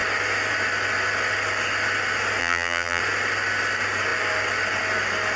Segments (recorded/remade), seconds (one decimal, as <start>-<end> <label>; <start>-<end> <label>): 0.0-2.4 recorded; 2.4-3.0 remade; 3.0-5.4 recorded